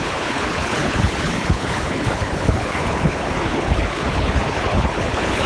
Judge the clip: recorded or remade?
remade